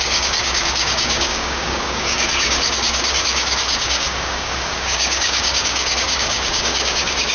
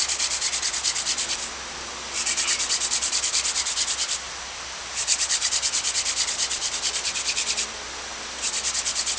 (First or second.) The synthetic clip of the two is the first